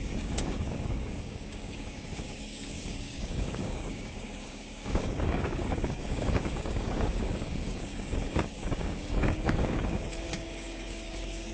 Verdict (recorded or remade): remade